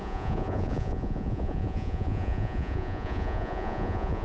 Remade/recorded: remade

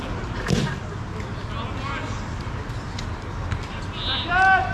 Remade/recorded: recorded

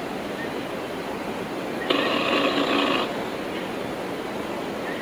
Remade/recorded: recorded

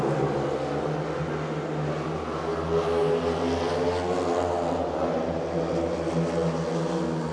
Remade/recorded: recorded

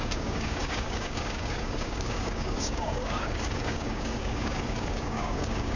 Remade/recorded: remade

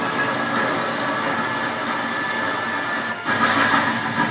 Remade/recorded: recorded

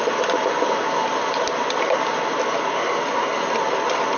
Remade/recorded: recorded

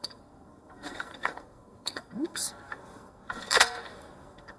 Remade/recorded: remade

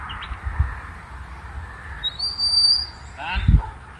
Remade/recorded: recorded